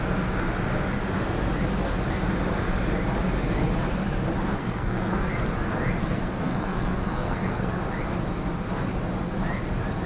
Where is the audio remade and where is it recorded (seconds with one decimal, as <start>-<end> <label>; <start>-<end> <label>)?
0.0-4.6 recorded; 4.6-5.3 remade; 5.3-6.0 recorded; 6.0-7.8 remade; 7.8-10.1 recorded